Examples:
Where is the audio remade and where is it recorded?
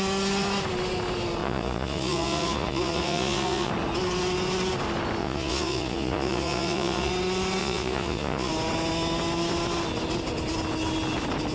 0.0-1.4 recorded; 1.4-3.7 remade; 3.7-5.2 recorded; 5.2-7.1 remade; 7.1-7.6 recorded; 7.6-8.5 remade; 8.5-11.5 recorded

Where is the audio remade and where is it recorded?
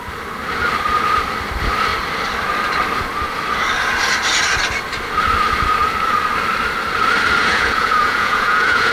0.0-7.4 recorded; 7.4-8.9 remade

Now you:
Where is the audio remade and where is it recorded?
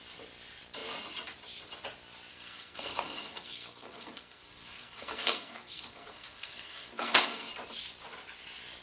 0.0-2.3 recorded; 2.3-7.5 remade; 7.5-8.8 recorded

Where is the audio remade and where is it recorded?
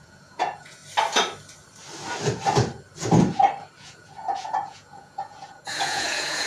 0.0-0.8 remade; 0.8-3.8 recorded; 3.8-6.5 remade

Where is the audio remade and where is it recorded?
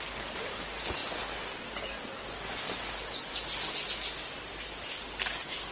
0.0-5.7 recorded